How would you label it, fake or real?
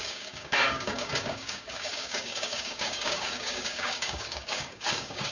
fake